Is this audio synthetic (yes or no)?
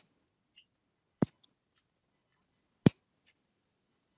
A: no